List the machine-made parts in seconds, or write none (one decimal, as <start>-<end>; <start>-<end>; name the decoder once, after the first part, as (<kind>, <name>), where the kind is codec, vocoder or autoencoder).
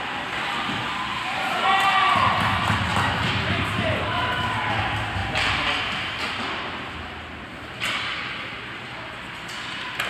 1.1-2.3 (vocoder, BigVGAN v2); 2.9-4.2; 5.2-5.8